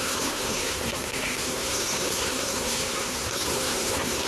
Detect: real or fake fake